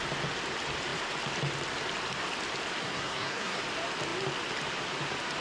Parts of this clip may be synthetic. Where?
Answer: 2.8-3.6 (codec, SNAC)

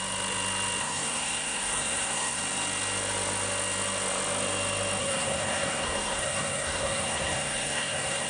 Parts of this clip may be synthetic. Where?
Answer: 0.8-2.4 (codec, SNAC); 5.0-8.3

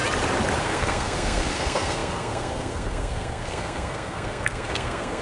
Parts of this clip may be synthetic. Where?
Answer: 0.6-5.2 (codec, SNAC)

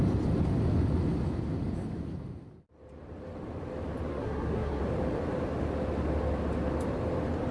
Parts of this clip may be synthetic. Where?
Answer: 4.1-4.8 (codec, SNAC)

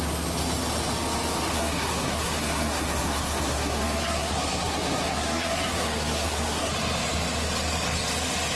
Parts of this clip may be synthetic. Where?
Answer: 1.5-6.7 (codec, SNAC)

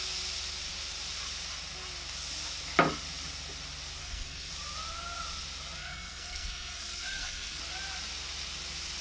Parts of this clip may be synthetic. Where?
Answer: 4.0-4.5 (codec, SNAC); 5.8-7.6

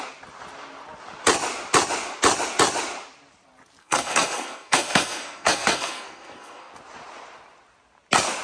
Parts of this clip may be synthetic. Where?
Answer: 3.8-6.7 (codec, SNAC)

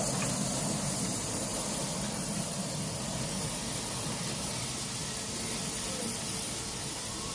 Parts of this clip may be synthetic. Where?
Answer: none